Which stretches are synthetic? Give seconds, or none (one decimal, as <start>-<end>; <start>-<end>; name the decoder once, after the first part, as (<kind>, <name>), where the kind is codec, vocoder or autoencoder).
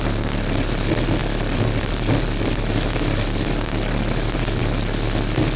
none